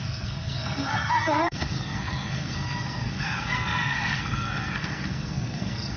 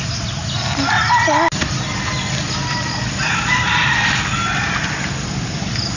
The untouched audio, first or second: second